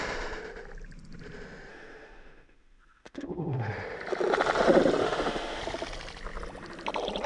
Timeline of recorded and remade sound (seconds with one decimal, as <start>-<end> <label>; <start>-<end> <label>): 0.0-1.7 recorded; 1.7-3.7 remade; 3.7-5.0 recorded; 5.0-5.6 remade; 5.6-7.3 recorded